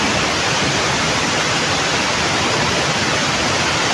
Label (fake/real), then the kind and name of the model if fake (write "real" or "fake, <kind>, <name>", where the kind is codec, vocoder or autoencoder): real